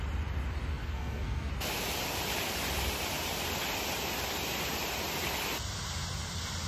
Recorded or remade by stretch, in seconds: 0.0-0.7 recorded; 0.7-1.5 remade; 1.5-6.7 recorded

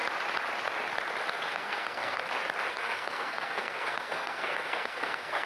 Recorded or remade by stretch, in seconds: 0.0-1.3 recorded; 1.3-2.2 remade; 2.2-2.7 recorded; 2.7-5.5 remade

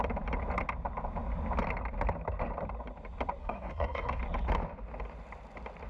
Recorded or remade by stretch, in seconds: 0.0-3.4 recorded; 3.4-4.2 remade; 4.2-5.9 recorded